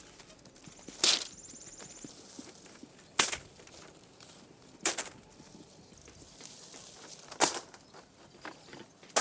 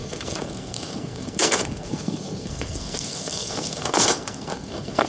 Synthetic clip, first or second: second